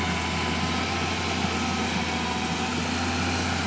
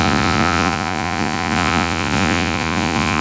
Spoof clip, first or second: second